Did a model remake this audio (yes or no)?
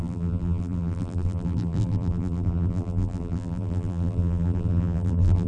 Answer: yes